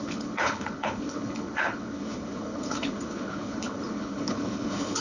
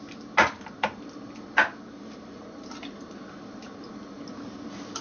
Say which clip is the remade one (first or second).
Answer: first